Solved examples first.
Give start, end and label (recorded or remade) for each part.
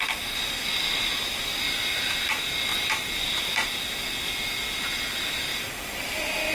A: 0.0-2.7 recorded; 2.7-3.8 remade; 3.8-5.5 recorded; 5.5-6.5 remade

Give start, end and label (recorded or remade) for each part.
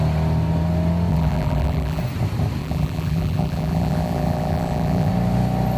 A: 0.0-1.1 recorded; 1.1-2.0 remade; 2.0-2.6 recorded; 2.6-5.1 remade; 5.1-5.8 recorded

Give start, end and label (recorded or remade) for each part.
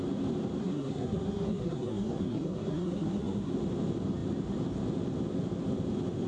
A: 0.0-0.6 recorded; 0.6-3.5 remade; 3.5-6.3 recorded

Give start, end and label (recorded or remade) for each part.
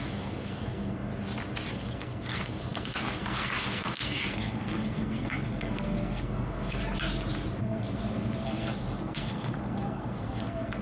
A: 0.0-1.1 remade; 1.1-1.7 recorded; 1.7-6.8 remade; 6.8-7.6 recorded; 7.6-10.8 remade